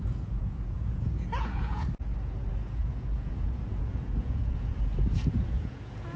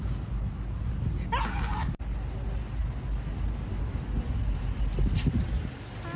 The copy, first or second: first